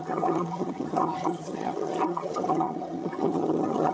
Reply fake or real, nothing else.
fake